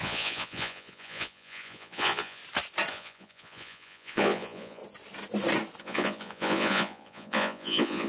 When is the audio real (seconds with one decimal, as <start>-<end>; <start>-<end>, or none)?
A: 2.4-2.9; 4.8-5.8